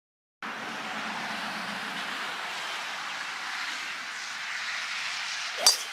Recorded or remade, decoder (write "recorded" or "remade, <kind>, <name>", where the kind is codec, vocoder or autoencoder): recorded